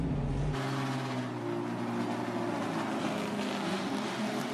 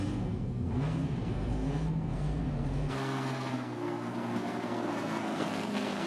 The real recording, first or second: first